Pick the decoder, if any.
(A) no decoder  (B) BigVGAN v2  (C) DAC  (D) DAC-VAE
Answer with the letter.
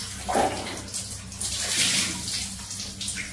A